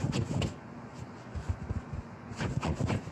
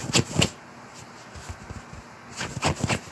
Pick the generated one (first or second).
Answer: first